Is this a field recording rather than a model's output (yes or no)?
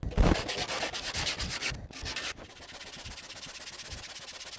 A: yes